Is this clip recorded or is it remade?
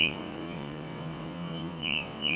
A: remade